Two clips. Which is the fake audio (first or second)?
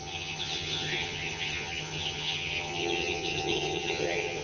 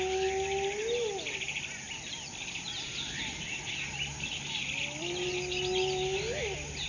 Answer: first